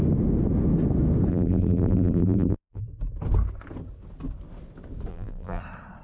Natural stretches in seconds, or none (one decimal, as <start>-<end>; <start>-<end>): 0.0-1.3; 2.8-5.1; 5.6-6.0